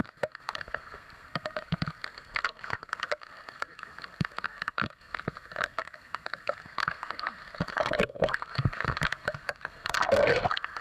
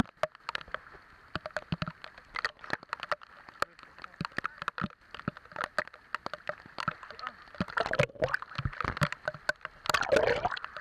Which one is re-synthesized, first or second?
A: first